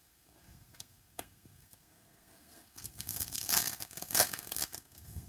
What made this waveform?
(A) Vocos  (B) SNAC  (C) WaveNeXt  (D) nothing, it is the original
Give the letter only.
B